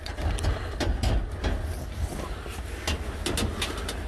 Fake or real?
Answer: real